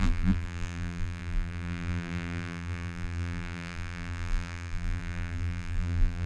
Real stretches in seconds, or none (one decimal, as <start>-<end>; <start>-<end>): none